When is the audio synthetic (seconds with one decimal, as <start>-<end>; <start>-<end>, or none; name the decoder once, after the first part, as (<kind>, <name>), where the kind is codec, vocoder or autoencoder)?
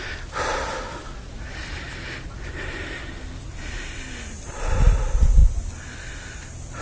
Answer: none